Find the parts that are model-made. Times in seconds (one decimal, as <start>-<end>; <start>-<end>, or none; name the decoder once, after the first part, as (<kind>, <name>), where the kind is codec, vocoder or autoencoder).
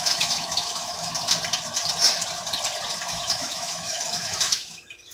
0.0-1.1 (autoencoder, DAC-VAE); 3.1-5.1